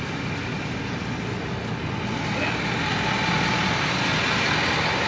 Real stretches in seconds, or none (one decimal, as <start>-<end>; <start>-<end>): 0.0-5.1